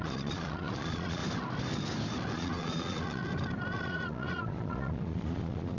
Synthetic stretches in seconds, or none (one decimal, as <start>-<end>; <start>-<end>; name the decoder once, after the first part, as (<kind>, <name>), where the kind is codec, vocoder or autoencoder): 0.0-1.2 (vocoder, Vocos); 2.3-3.2; 3.8-5.8